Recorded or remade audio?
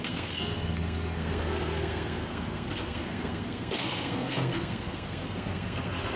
remade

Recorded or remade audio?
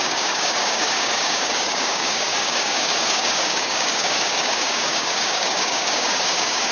remade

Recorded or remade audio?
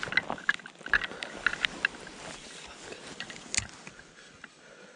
recorded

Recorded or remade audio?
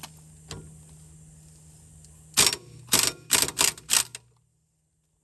recorded